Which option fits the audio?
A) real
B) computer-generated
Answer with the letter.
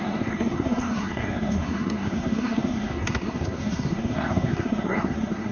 B